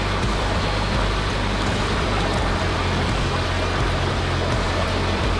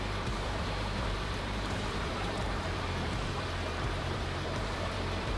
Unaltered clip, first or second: first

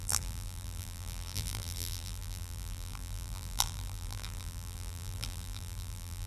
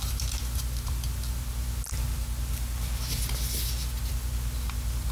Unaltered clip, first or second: second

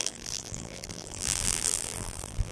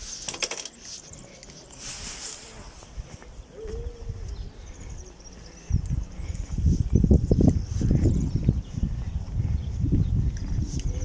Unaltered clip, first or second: second